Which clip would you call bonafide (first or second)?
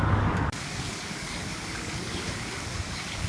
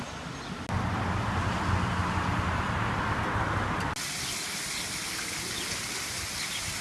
second